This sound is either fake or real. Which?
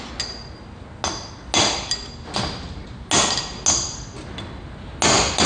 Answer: real